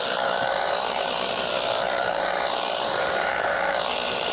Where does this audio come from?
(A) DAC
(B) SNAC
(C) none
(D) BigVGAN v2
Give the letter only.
D